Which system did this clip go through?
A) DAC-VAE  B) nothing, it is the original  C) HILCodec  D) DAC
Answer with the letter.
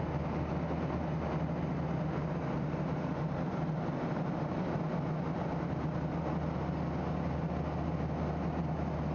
B